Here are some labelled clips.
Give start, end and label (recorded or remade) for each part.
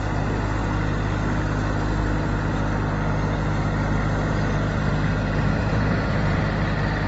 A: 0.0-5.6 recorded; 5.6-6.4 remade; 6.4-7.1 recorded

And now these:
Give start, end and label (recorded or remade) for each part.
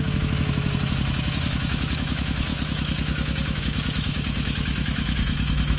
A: 0.0-5.8 remade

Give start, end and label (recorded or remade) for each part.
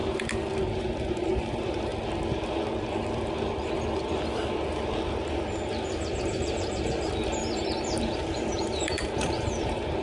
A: 0.0-0.6 recorded; 0.6-1.9 remade; 1.9-6.2 recorded; 6.2-10.0 remade